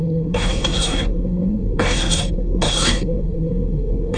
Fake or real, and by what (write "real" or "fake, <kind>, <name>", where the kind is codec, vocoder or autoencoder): fake, codec, SNAC